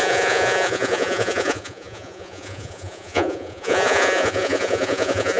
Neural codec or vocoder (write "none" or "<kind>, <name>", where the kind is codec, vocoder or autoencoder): vocoder, Vocos